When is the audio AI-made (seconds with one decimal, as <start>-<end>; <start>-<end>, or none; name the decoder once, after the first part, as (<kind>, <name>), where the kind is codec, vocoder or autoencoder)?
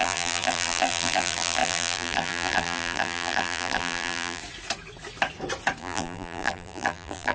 0.0-4.4 (vocoder, BigVGAN v2); 5.8-7.3